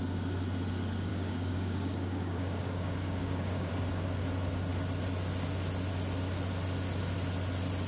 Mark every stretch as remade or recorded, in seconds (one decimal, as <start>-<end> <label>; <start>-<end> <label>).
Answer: 0.0-1.1 recorded; 1.1-3.7 remade; 3.7-7.9 recorded